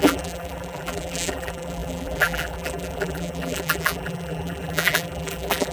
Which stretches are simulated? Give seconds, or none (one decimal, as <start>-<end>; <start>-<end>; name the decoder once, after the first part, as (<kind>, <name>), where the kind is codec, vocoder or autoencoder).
0.0-5.7 (vocoder, BigVGAN v2)